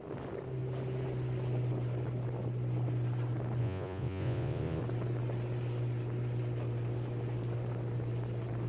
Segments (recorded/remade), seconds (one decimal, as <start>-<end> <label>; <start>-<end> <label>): 0.0-3.6 recorded; 3.6-4.8 remade; 4.8-8.7 recorded